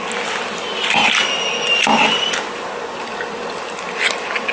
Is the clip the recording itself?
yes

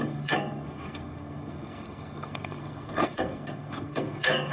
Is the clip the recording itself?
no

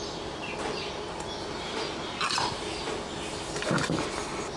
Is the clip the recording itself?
yes